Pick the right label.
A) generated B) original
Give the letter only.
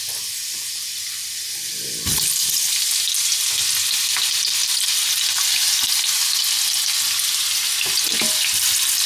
B